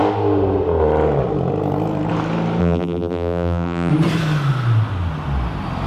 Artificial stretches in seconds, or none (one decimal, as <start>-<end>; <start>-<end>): 2.6-3.9

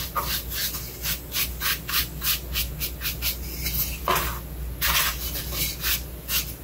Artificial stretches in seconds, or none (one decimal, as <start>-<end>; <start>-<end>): none

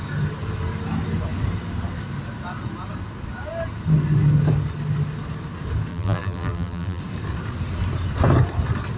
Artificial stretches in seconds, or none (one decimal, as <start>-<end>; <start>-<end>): 5.9-7.0

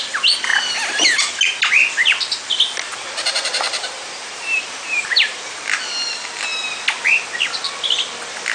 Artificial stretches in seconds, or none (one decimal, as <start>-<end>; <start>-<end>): 2.9-5.6

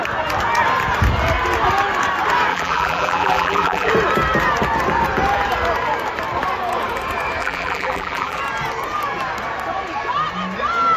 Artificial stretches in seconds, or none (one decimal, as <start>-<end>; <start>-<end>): 2.5-3.9; 7.4-8.4

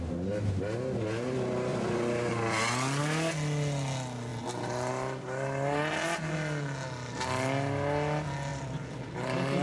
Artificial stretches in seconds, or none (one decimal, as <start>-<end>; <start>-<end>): 1.7-3.0; 8.5-9.6